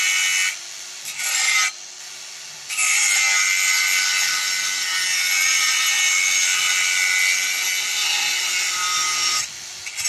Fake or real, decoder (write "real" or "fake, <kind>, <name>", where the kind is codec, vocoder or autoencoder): real